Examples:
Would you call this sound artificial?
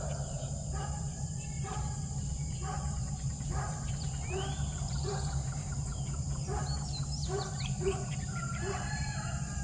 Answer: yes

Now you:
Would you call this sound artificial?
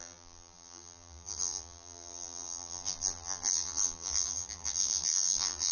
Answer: yes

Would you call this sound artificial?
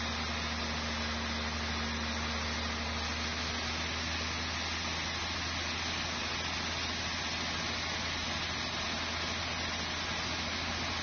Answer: no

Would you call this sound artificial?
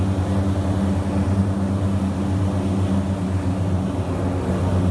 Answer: no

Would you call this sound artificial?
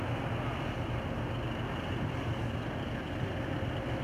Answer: no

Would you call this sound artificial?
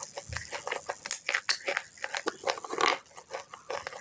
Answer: no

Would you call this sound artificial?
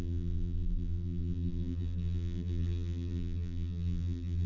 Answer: yes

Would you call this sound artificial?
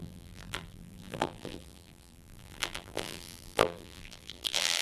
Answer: yes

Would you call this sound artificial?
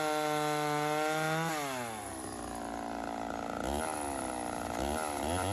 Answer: no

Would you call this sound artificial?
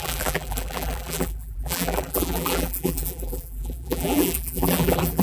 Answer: yes